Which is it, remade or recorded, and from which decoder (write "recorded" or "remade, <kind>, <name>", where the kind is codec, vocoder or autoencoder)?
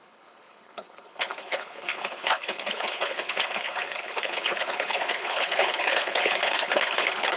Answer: remade, codec, HILCodec